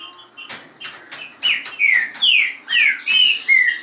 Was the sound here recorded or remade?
recorded